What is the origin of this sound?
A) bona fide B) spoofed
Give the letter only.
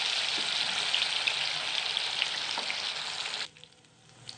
A